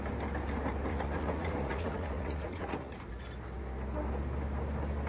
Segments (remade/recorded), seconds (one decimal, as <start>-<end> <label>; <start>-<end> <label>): 0.0-0.9 recorded; 0.9-3.0 remade; 3.0-5.1 recorded